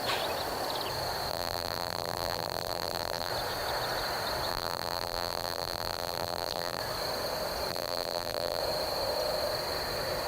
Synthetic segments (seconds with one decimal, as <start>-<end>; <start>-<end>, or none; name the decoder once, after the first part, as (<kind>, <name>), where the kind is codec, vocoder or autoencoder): 1.3-3.3 (vocoder, BigVGAN v2); 4.5-6.8; 7.7-8.6